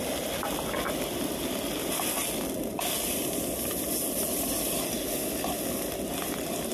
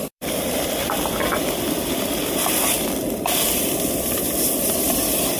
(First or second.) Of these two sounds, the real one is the first